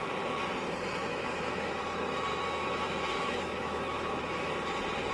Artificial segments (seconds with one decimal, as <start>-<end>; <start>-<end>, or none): 1.1-1.8; 2.3-4.5